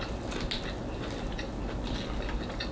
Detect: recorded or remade recorded